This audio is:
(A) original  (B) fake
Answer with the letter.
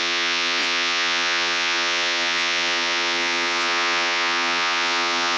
B